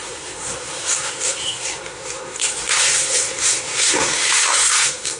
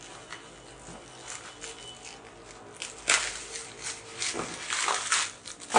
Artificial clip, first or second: first